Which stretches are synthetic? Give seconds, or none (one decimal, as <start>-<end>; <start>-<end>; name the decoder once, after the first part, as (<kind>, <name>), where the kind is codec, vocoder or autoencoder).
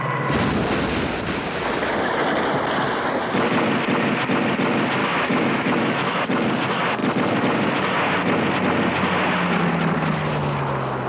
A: 5.0-6.2 (autoencoder, DAC-VAE)